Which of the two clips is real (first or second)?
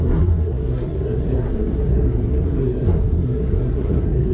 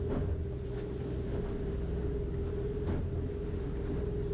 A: second